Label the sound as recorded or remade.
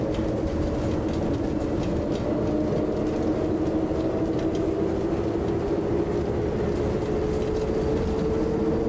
recorded